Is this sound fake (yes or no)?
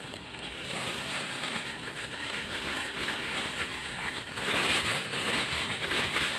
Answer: yes